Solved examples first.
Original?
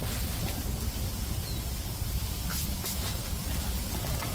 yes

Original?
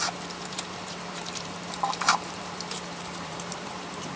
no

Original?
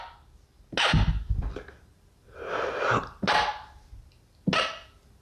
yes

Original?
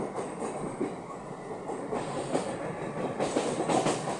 yes